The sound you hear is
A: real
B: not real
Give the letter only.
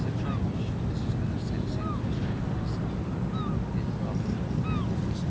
A